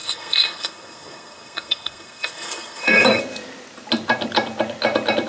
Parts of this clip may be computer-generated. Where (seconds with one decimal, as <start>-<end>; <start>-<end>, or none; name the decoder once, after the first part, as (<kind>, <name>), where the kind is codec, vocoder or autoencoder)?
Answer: 0.0-3.2 (codec, SNAC)